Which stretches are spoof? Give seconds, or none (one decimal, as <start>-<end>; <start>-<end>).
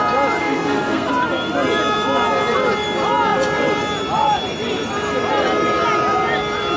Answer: 0.4-1.1